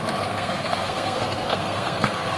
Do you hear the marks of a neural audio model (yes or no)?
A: yes